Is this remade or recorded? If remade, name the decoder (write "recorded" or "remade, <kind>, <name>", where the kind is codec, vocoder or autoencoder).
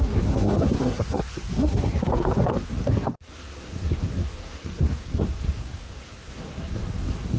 remade, codec, SNAC